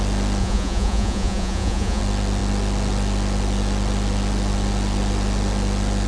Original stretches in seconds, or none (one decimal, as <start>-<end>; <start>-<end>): 0.0-0.4; 2.0-6.1